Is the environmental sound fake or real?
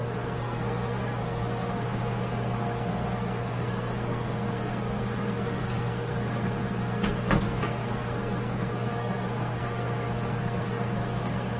fake